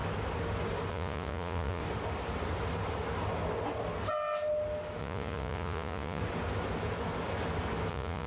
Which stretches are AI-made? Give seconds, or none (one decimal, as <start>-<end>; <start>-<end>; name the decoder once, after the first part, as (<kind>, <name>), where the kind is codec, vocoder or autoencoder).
0.9-1.8 (vocoder, Vocos); 5.0-6.2; 7.9-8.3